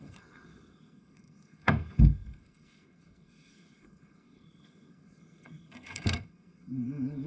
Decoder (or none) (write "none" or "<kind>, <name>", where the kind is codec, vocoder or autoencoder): codec, SNAC